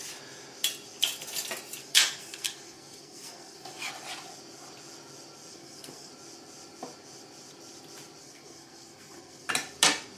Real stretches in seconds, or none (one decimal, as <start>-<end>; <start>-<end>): 0.0-1.8; 3.9-5.5; 6.1-8.2; 9.5-10.2